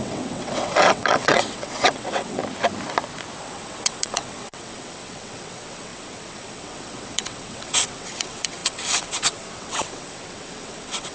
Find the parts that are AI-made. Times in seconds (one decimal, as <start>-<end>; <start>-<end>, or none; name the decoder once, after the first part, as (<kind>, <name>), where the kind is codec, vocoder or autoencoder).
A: 0.0-2.4 (vocoder, WaveNeXt); 3.4-11.1